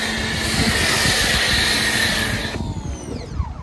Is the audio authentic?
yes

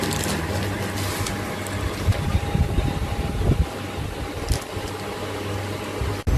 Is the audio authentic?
yes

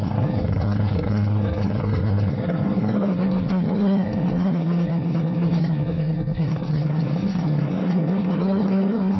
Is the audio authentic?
no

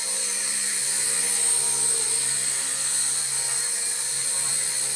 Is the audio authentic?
yes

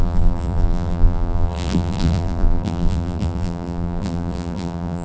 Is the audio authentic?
no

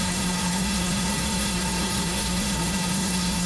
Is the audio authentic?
no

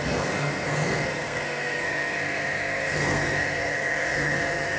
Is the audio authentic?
no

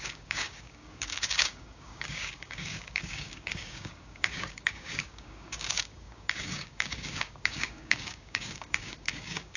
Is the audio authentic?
no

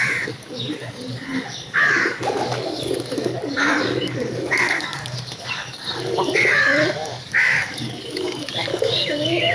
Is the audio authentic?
no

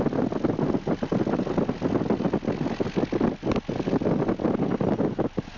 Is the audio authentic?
yes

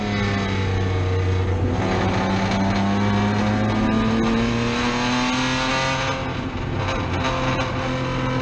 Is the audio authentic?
yes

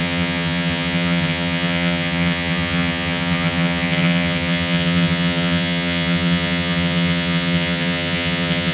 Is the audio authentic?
no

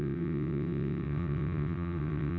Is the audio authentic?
no